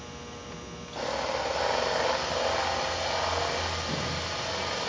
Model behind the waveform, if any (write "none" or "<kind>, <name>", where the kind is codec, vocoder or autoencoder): none